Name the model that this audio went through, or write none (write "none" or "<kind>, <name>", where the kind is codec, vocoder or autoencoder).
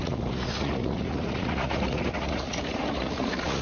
vocoder, Vocos